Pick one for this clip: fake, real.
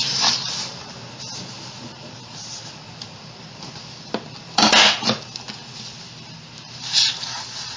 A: real